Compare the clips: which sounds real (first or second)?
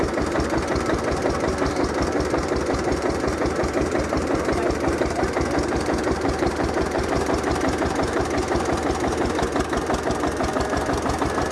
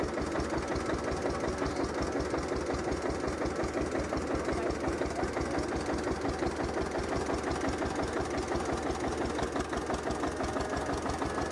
second